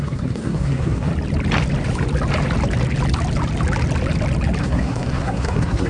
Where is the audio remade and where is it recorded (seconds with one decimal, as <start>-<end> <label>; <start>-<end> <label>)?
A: 0.0-1.1 remade; 1.1-4.6 recorded; 4.6-5.9 remade